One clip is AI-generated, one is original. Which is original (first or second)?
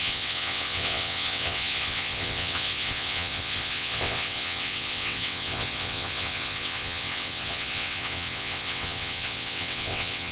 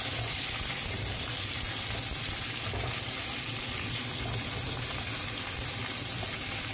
second